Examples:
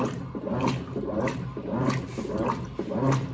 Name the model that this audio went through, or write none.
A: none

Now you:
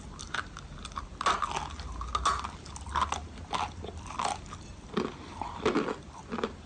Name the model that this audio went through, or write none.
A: none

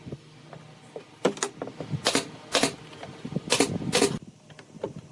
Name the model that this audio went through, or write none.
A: none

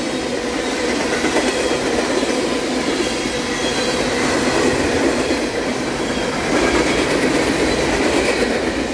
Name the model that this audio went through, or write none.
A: none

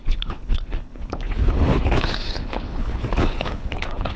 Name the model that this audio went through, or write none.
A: codec, HILCodec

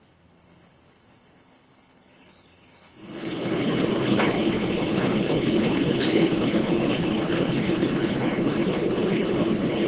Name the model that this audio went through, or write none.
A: codec, HILCodec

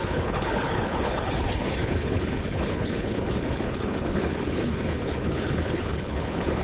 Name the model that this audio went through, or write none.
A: codec, HILCodec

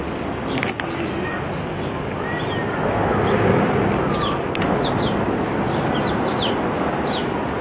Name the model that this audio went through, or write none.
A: none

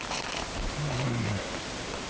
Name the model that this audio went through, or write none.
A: none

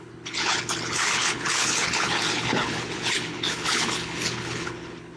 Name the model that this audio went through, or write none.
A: codec, HILCodec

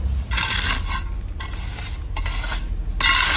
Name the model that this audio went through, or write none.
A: none